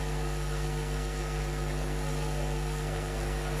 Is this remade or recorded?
remade